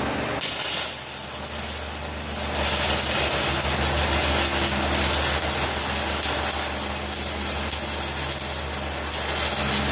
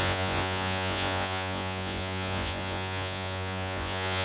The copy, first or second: second